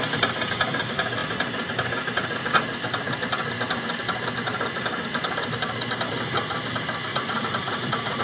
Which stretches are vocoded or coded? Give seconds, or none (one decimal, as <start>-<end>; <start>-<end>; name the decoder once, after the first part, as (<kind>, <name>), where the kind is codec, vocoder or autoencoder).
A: 7.1-8.2 (vocoder, Vocos)